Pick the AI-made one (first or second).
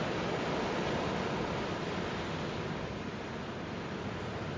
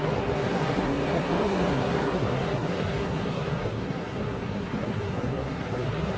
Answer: second